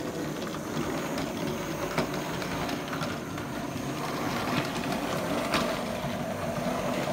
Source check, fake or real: real